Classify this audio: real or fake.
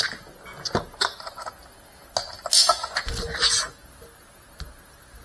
real